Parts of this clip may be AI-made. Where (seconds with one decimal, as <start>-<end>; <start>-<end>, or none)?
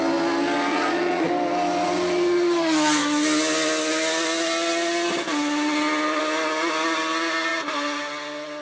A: 0.7-1.3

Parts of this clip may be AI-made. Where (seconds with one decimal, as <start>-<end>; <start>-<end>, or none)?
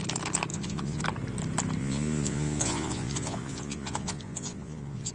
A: 0.5-1.0; 1.8-5.1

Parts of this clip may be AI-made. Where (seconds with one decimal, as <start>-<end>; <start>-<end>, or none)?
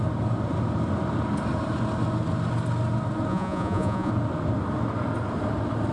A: 3.3-4.1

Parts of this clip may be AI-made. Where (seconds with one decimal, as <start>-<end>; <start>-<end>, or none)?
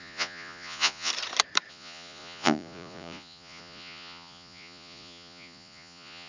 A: 0.0-1.1; 1.7-6.3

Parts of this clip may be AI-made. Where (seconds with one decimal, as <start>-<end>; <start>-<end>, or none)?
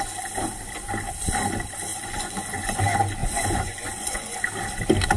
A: 1.9-2.8; 3.2-4.4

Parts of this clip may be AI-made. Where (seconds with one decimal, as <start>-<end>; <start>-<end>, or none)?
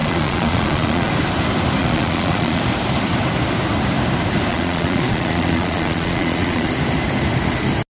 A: 0.0-1.1; 1.8-2.6; 4.5-6.7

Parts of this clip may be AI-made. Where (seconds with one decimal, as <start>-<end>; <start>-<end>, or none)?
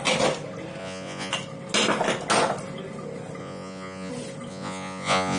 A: 0.8-1.3; 3.4-4.1; 4.5-5.4